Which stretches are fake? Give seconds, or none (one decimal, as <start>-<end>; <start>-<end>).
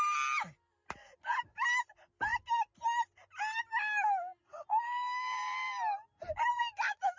none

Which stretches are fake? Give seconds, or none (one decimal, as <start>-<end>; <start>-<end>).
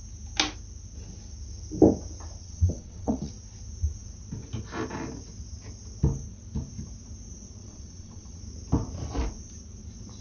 2.4-3.3; 7.6-8.4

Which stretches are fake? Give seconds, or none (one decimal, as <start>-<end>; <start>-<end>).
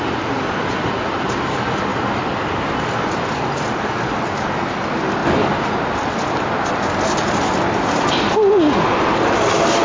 none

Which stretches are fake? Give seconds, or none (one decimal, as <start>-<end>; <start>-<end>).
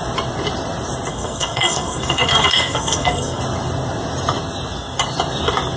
1.1-3.4